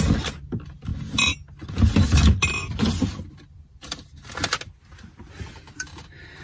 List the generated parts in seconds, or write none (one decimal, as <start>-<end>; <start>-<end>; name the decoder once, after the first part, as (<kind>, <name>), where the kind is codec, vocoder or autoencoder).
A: none